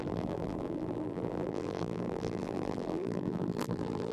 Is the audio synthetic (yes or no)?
yes